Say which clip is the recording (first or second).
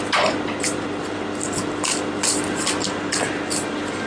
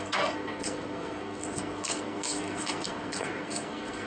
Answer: first